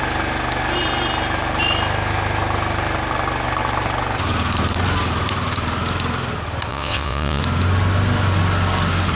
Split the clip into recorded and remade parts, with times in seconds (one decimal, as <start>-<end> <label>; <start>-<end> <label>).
0.0-6.7 recorded; 6.7-7.4 remade; 7.4-9.2 recorded